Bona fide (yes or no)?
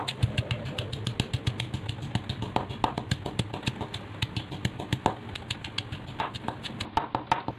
yes